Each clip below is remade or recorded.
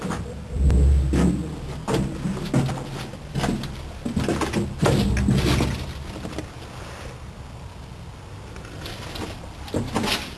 recorded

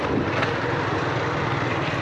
recorded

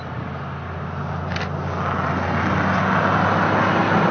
recorded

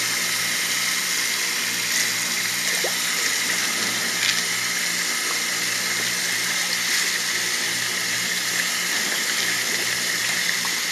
recorded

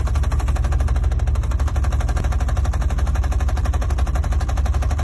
recorded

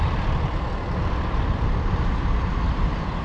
recorded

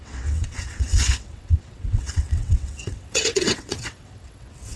remade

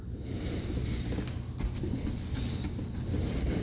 recorded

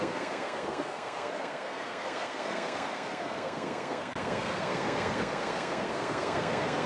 remade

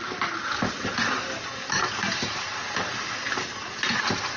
recorded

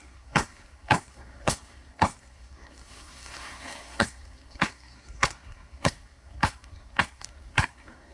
remade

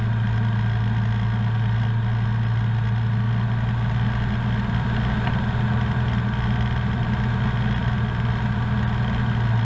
recorded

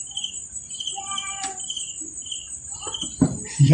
remade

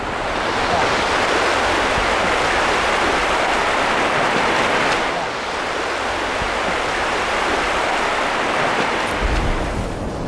recorded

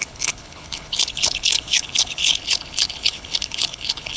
remade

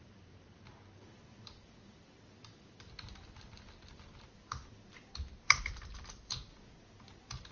recorded